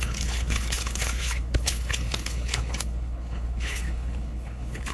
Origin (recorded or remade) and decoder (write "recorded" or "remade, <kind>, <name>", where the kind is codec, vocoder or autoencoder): remade, codec, HILCodec